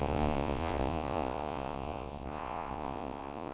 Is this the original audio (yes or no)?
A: no